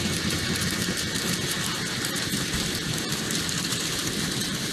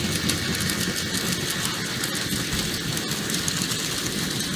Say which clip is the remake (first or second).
first